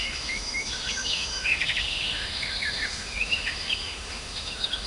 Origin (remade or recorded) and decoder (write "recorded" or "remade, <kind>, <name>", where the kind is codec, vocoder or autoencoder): remade, autoencoder, DAC-VAE